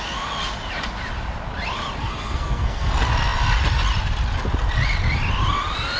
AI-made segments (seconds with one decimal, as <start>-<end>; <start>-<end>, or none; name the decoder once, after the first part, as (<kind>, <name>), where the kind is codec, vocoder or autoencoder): 2.0-2.9 (codec, SNAC)

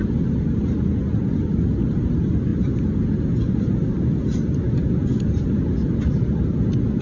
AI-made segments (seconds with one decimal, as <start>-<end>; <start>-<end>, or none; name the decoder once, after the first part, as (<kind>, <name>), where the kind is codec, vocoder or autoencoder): none

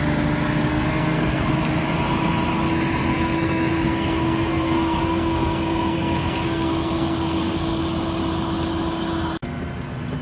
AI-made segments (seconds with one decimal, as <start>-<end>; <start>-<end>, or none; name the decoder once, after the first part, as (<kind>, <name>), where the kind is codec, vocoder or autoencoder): 0.7-1.5 (codec, SNAC); 3.1-7.8

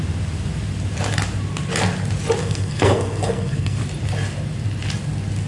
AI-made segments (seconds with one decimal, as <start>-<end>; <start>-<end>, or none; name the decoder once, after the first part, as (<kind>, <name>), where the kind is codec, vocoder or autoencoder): 2.4-3.8 (codec, SNAC)

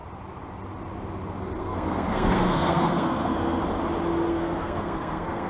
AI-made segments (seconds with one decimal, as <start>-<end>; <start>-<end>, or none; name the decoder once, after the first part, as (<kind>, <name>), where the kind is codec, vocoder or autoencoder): 1.6-3.6 (codec, SNAC); 4.3-5.5

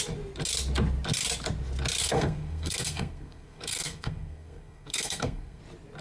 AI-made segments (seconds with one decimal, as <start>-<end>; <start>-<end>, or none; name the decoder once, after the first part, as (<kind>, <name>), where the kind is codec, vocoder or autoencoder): 2.0-5.6 (codec, SNAC)

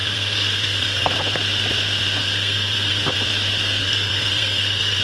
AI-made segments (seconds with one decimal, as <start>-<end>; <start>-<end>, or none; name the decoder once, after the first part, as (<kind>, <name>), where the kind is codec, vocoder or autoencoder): 0.0-1.1 (codec, SNAC); 2.2-3.1; 3.8-5.0

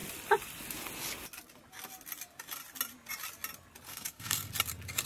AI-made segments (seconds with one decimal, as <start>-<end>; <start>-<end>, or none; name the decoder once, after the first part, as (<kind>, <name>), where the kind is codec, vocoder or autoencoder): 3.9-4.5 (codec, SNAC)